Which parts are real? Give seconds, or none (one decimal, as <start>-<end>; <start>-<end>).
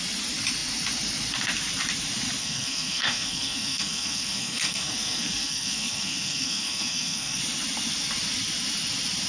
0.0-2.4; 7.4-9.3